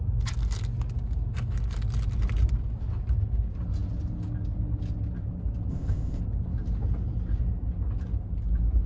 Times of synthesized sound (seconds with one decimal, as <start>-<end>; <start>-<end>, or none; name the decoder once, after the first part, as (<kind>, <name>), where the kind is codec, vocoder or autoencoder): 5.7-6.2 (codec, ZipCodec)